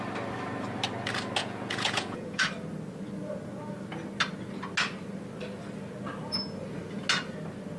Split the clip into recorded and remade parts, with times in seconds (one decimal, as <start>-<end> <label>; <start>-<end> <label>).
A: 0.0-1.4 recorded; 1.4-2.5 remade; 2.5-7.8 recorded